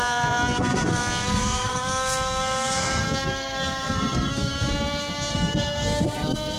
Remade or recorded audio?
remade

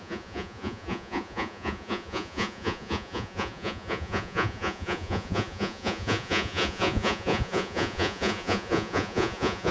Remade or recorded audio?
remade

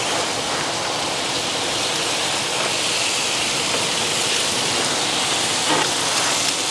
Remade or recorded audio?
recorded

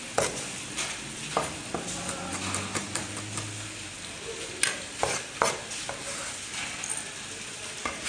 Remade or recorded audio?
recorded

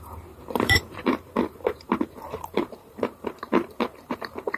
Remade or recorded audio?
remade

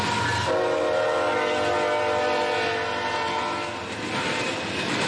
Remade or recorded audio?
recorded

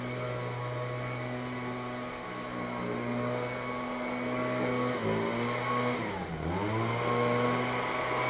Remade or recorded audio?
recorded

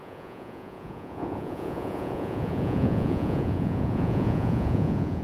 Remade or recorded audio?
remade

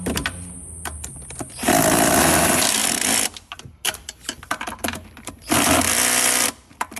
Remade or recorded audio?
recorded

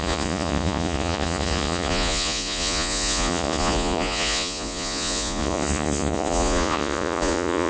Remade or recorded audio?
remade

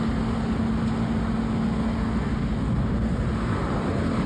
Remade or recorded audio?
recorded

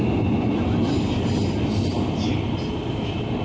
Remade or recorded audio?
recorded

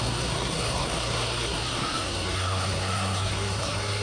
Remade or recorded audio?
remade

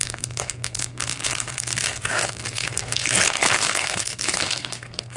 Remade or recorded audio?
remade